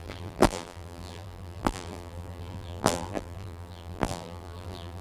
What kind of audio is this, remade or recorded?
remade